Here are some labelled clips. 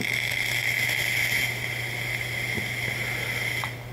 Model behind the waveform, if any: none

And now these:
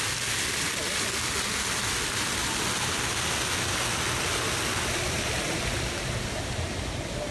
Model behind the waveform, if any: none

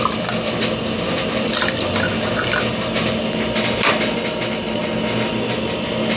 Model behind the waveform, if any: none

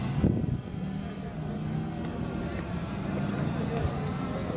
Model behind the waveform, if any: none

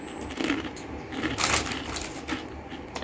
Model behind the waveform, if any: none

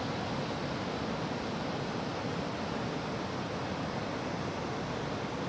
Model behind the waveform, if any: none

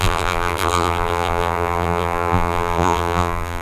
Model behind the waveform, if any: vocoder, BigVGAN v2